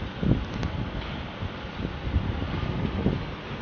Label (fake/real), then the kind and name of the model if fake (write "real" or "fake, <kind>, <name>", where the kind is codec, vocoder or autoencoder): real